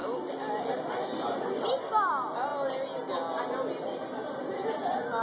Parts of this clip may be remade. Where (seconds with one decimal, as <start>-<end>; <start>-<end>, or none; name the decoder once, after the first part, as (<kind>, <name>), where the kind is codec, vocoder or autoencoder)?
none